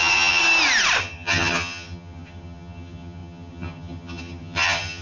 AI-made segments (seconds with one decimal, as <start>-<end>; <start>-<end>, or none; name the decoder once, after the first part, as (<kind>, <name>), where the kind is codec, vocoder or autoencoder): 0.0-0.4 (vocoder, HiFi-GAN); 1.0-5.0